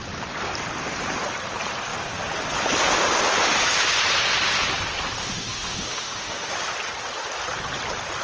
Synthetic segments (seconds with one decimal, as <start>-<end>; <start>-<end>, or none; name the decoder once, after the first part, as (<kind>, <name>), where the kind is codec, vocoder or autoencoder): 5.2-6.5 (autoencoder, DAC-VAE)